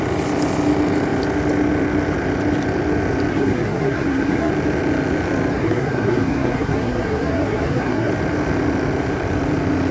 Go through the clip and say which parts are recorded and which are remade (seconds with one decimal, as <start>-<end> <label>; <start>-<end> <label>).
0.0-3.3 recorded; 3.3-4.5 remade; 4.5-5.5 recorded; 5.5-8.1 remade; 8.1-9.9 recorded